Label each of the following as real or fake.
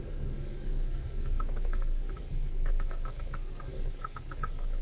fake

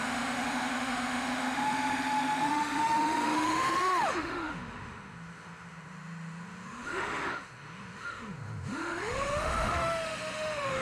fake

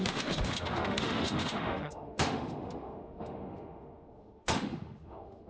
fake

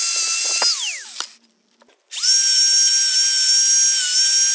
real